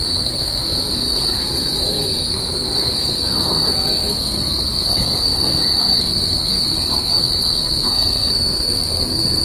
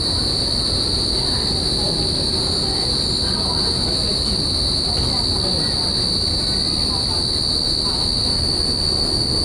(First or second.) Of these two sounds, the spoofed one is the first